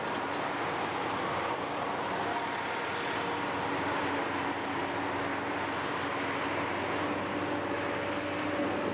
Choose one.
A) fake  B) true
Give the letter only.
B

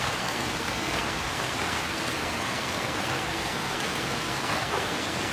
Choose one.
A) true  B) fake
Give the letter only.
B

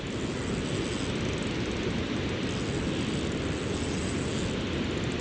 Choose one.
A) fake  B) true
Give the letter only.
B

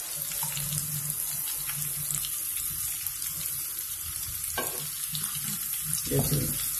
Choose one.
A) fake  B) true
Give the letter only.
B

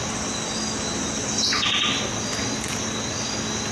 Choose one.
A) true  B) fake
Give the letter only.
A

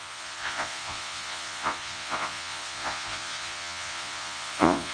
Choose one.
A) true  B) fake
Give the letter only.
B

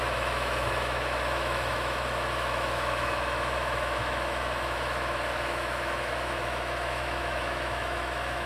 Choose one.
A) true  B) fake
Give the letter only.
B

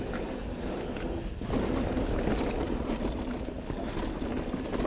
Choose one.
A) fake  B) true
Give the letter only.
B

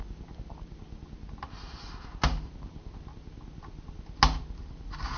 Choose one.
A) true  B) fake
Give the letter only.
A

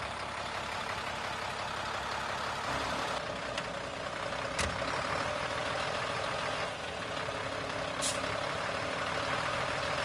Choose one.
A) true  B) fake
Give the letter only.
A